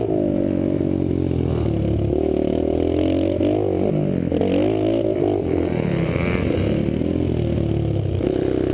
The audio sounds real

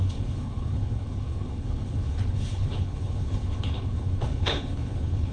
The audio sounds fake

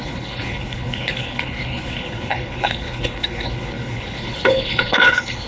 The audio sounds fake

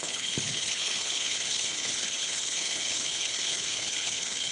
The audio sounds fake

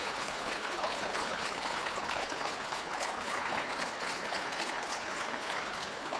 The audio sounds fake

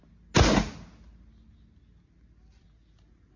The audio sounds real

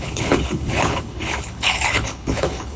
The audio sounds fake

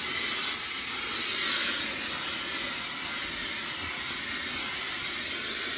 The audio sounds real